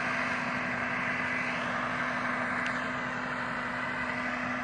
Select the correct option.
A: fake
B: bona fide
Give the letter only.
B